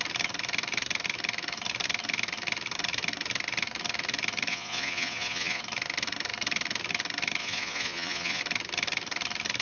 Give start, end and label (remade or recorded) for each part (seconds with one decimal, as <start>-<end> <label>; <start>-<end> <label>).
0.0-4.5 recorded; 4.5-5.6 remade; 5.6-7.4 recorded; 7.4-8.4 remade; 8.4-9.6 recorded